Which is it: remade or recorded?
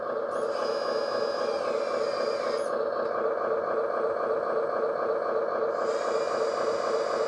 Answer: recorded